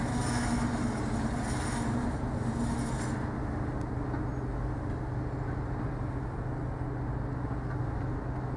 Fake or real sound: real